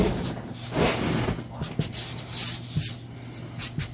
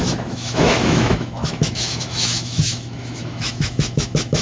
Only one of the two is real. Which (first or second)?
first